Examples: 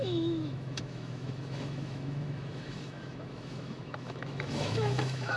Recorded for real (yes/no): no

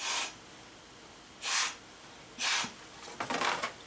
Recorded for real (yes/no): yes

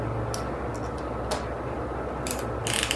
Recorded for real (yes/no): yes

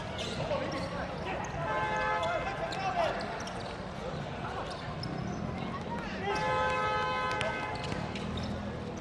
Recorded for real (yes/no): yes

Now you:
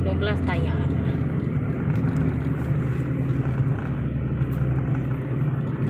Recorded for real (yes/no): yes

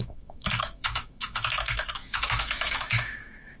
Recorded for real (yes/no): no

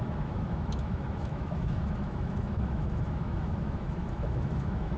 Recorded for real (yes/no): no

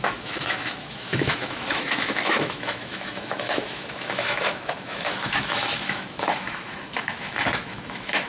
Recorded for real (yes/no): no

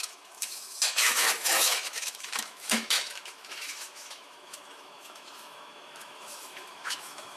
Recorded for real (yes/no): no